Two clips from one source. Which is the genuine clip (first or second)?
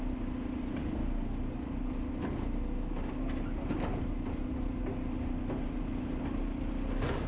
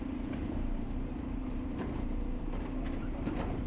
first